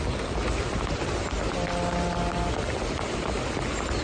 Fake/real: real